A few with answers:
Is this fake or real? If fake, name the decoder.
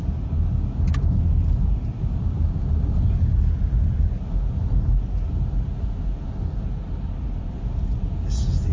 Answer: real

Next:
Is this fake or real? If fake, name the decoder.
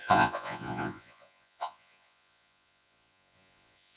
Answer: fake, vocoder, Vocos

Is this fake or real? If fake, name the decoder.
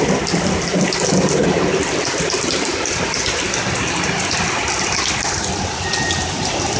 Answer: real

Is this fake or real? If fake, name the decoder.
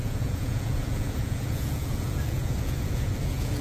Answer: fake, vocoder, Vocos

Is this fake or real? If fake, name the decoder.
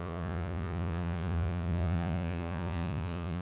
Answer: fake, vocoder, Vocos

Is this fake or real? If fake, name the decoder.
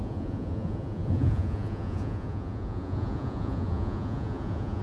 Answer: fake, vocoder, Vocos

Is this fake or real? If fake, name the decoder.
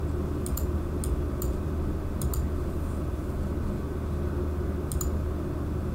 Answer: real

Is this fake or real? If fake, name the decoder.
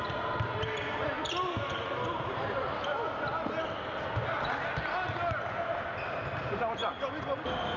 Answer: real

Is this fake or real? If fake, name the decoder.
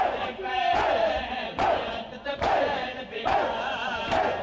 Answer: fake, vocoder, Vocos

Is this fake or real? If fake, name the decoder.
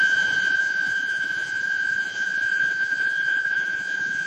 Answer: fake, vocoder, Vocos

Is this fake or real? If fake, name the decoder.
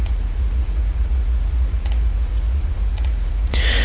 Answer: fake, vocoder, Vocos